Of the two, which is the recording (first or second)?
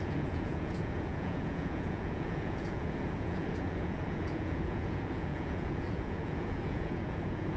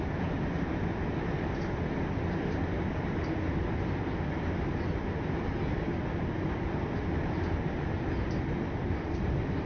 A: second